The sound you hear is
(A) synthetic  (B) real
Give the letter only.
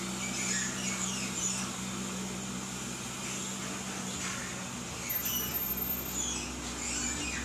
B